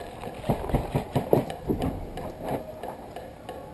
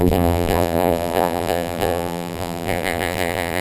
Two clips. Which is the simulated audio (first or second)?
second